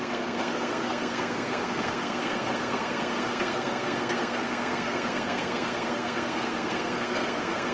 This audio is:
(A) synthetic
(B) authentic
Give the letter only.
A